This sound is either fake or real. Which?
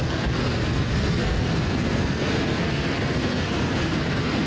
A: fake